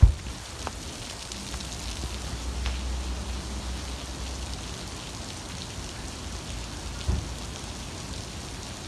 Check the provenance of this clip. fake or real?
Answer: real